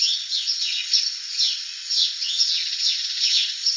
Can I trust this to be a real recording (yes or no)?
no